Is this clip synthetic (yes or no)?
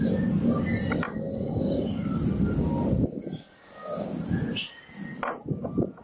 no